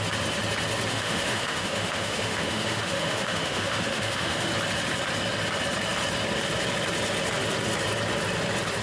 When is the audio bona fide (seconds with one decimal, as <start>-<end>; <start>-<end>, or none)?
0.0-0.9; 4.5-8.8